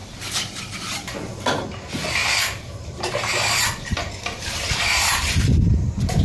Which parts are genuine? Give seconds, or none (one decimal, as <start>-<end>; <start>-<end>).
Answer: 0.6-2.2